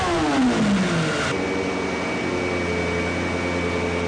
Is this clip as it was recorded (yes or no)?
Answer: yes